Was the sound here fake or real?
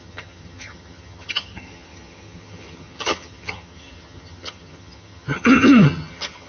fake